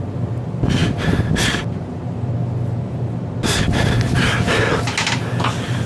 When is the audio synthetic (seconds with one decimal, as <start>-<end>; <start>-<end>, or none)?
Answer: none